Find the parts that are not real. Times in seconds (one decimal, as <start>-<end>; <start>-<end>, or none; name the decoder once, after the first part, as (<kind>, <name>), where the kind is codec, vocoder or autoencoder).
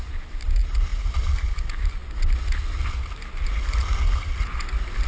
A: none